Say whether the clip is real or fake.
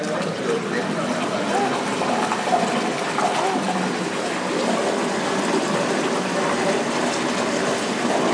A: real